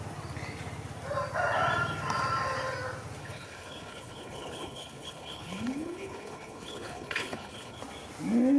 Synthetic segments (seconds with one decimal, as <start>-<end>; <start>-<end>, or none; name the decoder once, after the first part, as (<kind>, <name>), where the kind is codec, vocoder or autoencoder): 3.2-7.8 (codec, HILCodec)